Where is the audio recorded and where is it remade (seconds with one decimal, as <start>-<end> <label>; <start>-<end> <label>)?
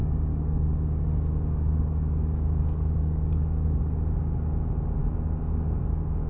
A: 0.0-3.8 remade; 3.8-6.3 recorded